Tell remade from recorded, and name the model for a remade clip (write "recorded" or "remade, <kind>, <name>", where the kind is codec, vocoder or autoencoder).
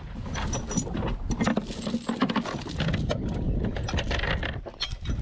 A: recorded